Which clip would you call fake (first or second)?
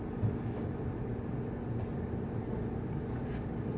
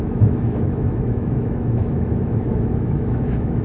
second